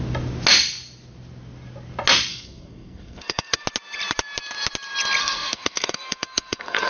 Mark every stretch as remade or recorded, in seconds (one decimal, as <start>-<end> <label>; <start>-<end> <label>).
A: 0.0-2.3 recorded; 2.3-3.6 remade; 3.6-5.2 recorded; 5.2-6.9 remade